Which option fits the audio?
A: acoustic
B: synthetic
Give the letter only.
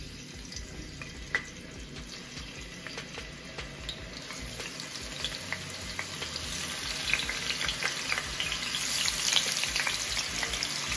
A